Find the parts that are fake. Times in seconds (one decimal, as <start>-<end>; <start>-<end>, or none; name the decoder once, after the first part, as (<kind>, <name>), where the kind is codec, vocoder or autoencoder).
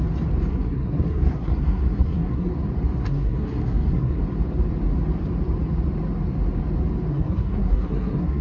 0.5-2.5 (codec, SNAC); 3.0-4.2; 7.1-8.4